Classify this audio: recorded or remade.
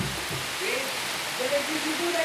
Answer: recorded